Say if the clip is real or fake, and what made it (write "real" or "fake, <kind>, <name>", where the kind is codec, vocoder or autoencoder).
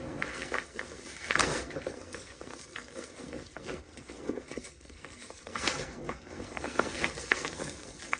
fake, codec, SNAC